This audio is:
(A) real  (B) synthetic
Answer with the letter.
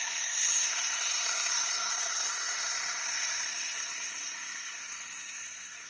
B